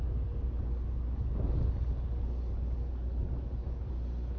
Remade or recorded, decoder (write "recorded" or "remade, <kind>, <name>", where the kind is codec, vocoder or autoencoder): recorded